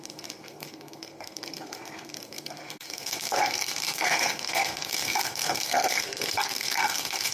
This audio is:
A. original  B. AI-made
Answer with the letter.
B